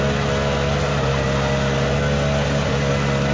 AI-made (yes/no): no